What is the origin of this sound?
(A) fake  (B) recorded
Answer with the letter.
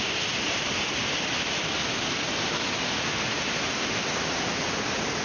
B